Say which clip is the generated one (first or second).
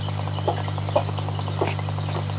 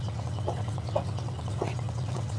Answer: second